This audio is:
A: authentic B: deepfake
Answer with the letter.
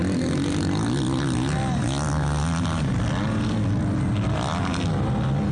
A